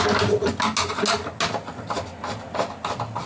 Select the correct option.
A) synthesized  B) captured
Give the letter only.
B